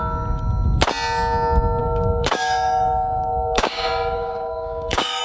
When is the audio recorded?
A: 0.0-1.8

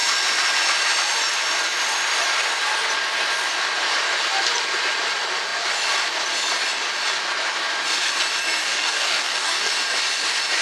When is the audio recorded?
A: 0.0-8.6; 9.7-10.6

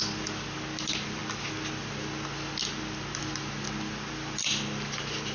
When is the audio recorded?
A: 0.0-5.3